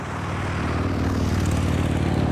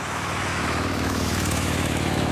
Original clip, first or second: first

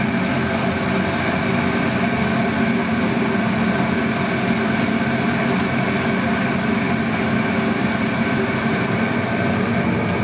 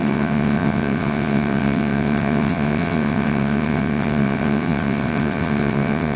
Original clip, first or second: first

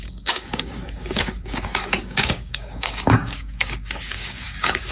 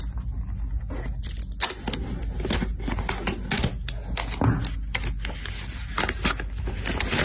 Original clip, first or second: second